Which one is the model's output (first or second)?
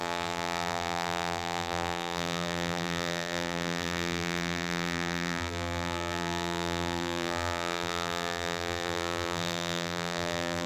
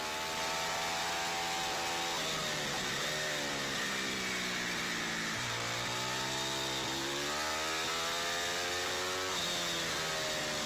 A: first